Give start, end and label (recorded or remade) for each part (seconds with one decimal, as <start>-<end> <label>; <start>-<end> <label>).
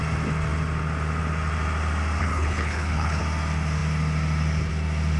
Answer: 0.0-2.2 recorded; 2.2-3.2 remade; 3.2-5.2 recorded